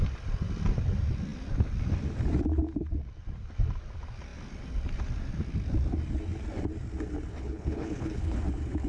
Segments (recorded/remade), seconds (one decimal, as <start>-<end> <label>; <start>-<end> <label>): 0.0-7.3 recorded; 7.3-8.4 remade; 8.4-8.9 recorded